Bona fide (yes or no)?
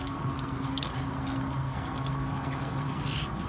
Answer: no